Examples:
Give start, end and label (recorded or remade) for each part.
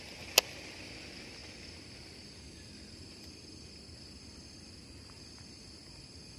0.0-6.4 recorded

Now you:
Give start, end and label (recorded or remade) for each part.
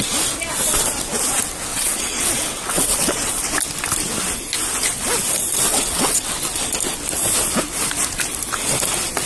0.0-1.7 recorded; 1.7-3.5 remade; 3.5-5.7 recorded; 5.7-6.3 remade; 6.3-9.3 recorded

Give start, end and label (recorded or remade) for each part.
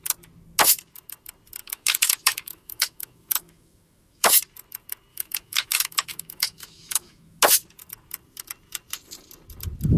0.0-1.6 recorded; 1.6-4.4 remade; 4.4-5.1 recorded; 5.1-7.4 remade; 7.4-10.0 recorded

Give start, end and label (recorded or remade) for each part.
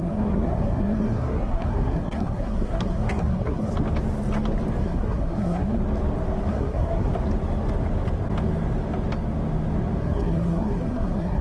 0.0-3.7 remade; 3.7-4.8 recorded; 4.8-5.8 remade; 5.8-6.5 recorded; 6.5-7.1 remade; 7.1-10.0 recorded; 10.0-11.4 remade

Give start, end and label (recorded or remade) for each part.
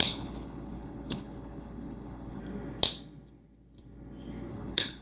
0.0-2.4 remade; 2.4-4.5 recorded; 4.5-5.0 remade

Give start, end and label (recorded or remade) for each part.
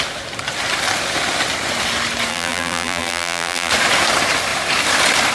0.0-2.3 recorded; 2.3-3.7 remade; 3.7-5.3 recorded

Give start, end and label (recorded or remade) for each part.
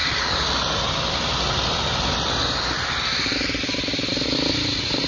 0.0-5.1 recorded